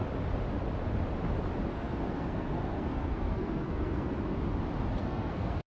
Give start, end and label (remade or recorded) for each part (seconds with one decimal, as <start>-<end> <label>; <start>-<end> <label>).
0.0-1.7 recorded; 1.7-4.4 remade; 4.4-5.0 recorded; 5.0-5.7 remade